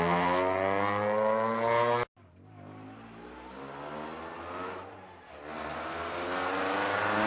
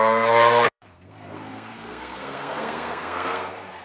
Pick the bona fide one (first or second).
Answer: first